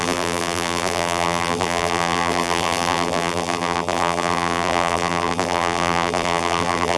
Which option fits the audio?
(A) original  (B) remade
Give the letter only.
B